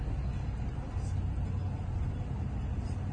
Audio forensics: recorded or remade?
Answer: recorded